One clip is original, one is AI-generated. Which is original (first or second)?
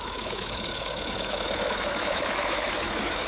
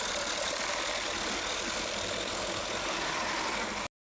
second